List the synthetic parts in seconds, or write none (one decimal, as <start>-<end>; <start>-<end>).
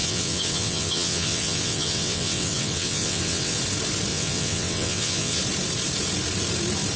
0.0-3.6; 4.1-5.4